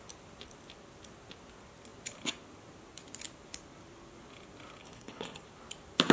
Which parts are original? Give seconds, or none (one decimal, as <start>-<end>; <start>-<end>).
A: 0.0-4.8; 5.4-6.1